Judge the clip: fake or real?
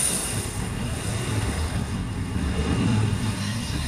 fake